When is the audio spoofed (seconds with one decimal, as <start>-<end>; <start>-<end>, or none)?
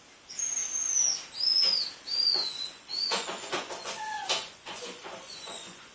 2.3-5.9